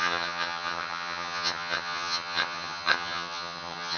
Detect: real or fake fake